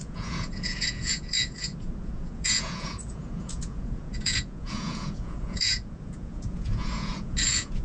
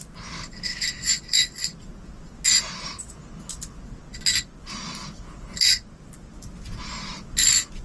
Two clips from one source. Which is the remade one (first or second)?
first